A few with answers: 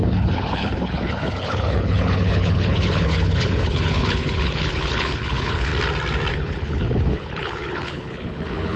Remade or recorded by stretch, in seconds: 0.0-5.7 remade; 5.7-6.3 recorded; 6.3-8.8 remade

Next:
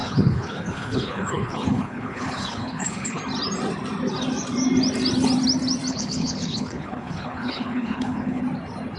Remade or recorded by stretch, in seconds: 0.0-3.2 remade; 3.2-5.9 recorded; 5.9-8.4 remade; 8.4-9.0 recorded

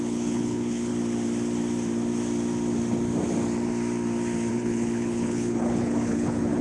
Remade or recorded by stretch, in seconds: 0.0-0.9 remade; 0.9-4.5 recorded; 4.5-6.6 remade

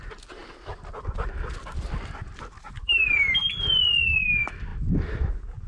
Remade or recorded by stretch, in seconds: 0.0-5.7 recorded

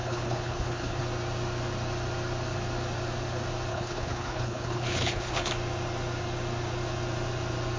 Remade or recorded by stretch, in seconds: 0.0-1.0 remade; 1.0-3.7 recorded; 3.7-5.5 remade; 5.5-7.8 recorded